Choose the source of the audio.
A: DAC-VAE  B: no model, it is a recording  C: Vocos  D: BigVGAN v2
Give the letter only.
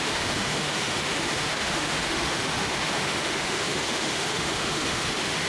A